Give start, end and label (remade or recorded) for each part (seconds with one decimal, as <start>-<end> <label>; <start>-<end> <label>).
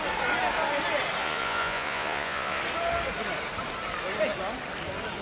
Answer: 0.0-1.2 recorded; 1.2-2.6 remade; 2.6-5.2 recorded